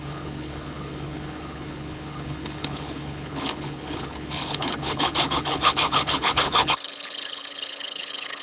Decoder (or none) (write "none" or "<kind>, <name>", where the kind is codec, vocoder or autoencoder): codec, HILCodec